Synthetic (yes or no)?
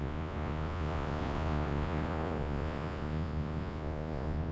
yes